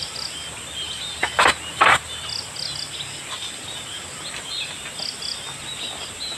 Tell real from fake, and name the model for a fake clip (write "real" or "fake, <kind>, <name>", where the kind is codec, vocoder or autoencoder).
real